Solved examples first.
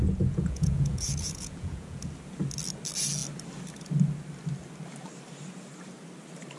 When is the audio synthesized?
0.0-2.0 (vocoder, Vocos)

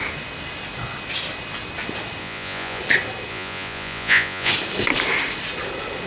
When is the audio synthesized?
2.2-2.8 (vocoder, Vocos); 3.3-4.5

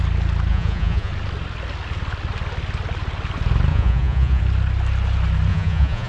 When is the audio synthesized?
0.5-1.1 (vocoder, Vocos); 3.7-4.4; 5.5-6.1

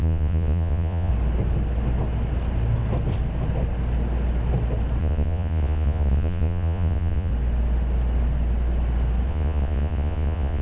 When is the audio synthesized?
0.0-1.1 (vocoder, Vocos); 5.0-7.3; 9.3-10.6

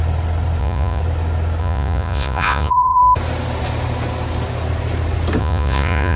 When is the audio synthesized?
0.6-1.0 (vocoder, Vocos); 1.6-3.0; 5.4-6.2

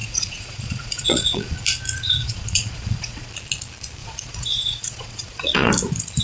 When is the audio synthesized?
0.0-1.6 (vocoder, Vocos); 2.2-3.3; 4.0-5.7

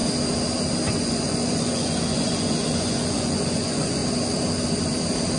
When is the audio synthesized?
0.9-4.0 (vocoder, Vocos)